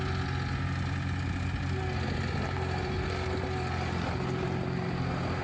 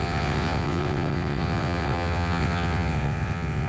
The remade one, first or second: second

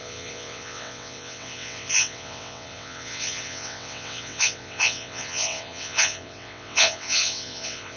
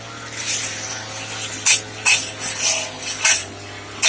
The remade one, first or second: first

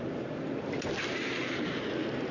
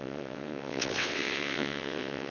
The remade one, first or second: second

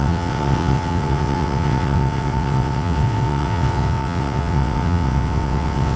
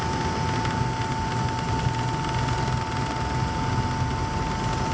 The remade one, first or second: first